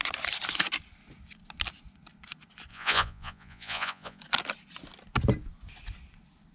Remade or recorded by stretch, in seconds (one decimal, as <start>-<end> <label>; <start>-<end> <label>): 0.0-2.7 recorded; 2.7-4.2 remade; 4.2-6.5 recorded